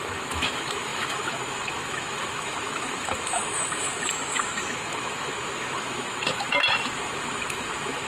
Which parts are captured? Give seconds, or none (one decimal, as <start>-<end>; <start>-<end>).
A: none